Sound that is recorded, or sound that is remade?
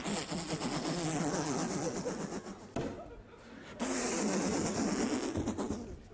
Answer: recorded